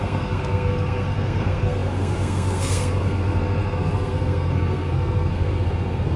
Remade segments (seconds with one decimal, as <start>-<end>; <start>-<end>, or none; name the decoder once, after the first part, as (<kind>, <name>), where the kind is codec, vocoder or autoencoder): 0.0-6.2 (codec, SNAC)